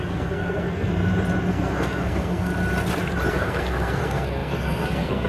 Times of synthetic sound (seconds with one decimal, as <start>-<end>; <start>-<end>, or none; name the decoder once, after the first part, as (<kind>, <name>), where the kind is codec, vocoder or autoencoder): 0.0-0.9 (codec, SNAC); 1.5-2.5; 3.3-5.3